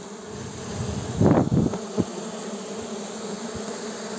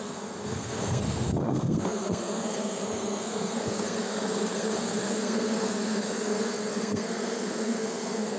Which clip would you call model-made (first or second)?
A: second